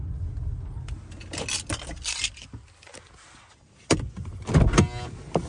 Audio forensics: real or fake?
real